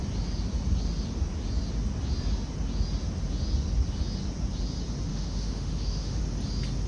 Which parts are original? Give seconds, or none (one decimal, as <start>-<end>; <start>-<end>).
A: 0.0-5.1; 6.2-6.9